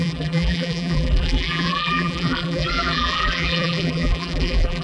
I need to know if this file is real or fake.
fake